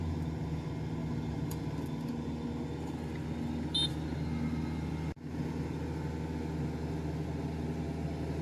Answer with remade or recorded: recorded